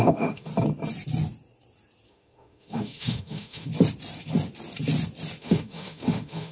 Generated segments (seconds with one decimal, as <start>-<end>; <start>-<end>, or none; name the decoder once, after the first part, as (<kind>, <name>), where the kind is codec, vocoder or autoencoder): 0.0-0.5 (autoencoder, DAC-VAE); 2.1-3.7; 5.4-6.5

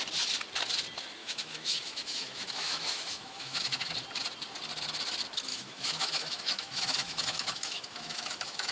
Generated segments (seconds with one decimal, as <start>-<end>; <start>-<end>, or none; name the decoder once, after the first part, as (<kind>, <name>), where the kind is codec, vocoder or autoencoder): 1.2-3.9 (autoencoder, DAC-VAE); 5.5-8.7

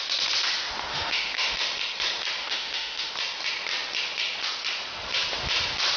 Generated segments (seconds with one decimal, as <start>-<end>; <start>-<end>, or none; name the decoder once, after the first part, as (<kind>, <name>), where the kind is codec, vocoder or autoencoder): 0.9-1.5 (autoencoder, DAC-VAE); 2.4-3.1

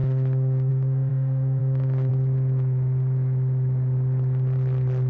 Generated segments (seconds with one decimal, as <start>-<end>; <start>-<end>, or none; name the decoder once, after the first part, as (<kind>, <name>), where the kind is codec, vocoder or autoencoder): 0.0-2.1 (autoencoder, DAC-VAE)

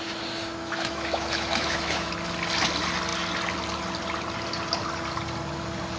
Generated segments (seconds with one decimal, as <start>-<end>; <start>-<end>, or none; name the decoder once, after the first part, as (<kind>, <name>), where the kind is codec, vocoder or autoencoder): 0.6-2.1 (autoencoder, DAC-VAE)

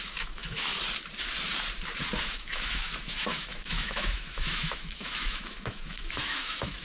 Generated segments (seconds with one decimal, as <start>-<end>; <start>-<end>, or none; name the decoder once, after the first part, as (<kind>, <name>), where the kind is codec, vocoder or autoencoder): 0.0-0.7 (autoencoder, DAC-VAE); 2.2-6.8

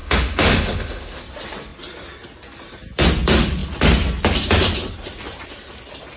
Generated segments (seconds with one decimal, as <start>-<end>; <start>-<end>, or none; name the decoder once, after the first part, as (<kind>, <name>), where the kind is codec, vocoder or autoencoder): 0.0-1.2 (autoencoder, DAC-VAE)

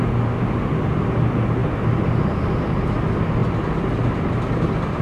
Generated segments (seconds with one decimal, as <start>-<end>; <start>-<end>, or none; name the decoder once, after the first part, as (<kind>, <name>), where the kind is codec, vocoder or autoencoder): none